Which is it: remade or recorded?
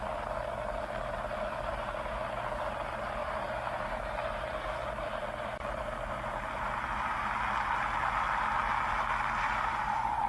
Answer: recorded